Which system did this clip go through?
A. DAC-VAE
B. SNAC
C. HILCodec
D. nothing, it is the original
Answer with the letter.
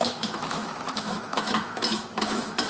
A